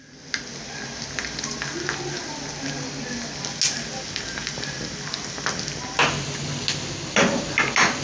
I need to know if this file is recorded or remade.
recorded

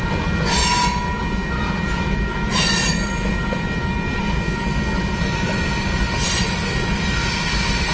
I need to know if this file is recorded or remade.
recorded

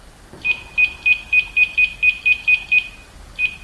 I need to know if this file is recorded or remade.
recorded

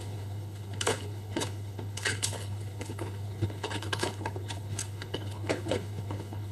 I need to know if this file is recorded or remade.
remade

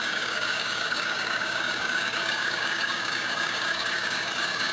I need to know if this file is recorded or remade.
remade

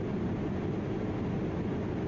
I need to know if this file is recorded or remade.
recorded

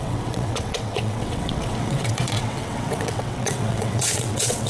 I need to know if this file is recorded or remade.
remade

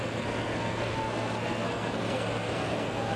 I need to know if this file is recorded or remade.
remade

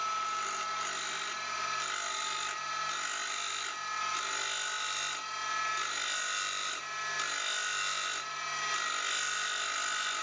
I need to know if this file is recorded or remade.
recorded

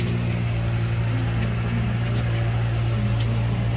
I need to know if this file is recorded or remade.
recorded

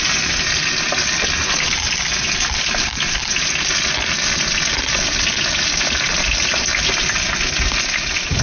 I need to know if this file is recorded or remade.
recorded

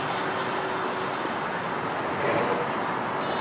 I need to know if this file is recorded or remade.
recorded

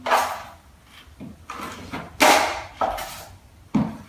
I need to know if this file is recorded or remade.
recorded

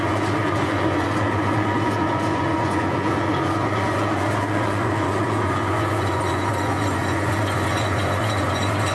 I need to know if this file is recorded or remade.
remade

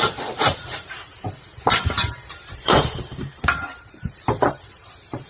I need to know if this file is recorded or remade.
remade